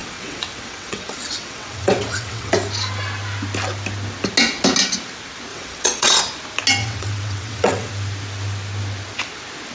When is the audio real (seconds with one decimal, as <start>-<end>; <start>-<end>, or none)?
2.5-5.5; 6.2-6.8; 7.9-9.7